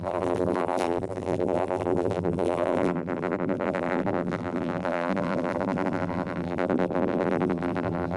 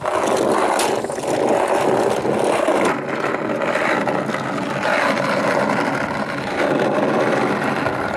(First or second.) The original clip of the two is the second